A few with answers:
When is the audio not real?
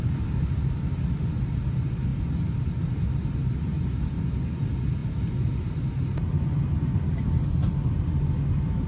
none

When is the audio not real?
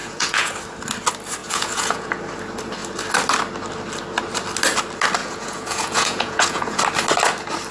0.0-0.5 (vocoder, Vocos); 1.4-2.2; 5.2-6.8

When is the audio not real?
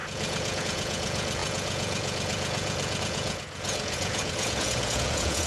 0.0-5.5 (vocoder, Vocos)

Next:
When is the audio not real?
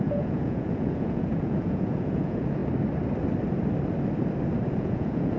0.0-2.6 (vocoder, Vocos); 4.8-5.4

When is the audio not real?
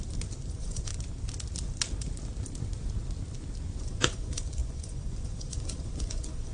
0.5-0.9 (vocoder, Vocos); 3.8-6.5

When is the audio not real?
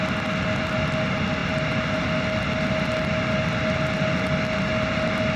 none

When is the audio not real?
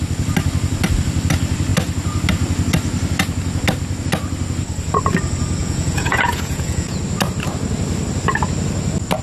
5.6-7.0 (vocoder, Vocos)